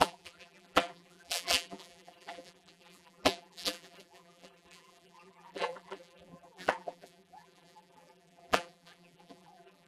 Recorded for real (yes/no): no